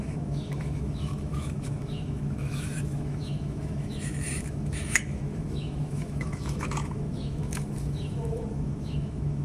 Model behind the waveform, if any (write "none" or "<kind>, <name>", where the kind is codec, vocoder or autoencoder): autoencoder, DAC-VAE